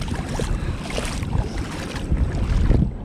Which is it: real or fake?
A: real